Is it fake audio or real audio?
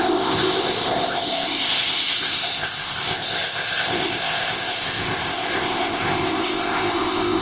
fake